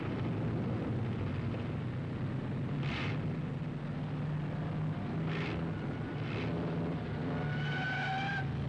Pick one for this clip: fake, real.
real